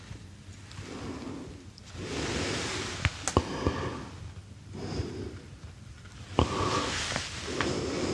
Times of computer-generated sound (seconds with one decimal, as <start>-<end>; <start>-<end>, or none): none